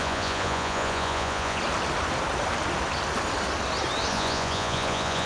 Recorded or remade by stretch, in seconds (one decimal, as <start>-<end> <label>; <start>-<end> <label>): 0.0-1.6 remade; 1.6-4.1 recorded; 4.1-5.3 remade